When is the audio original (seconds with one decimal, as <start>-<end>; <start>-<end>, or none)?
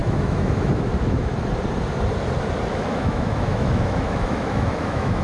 1.3-2.7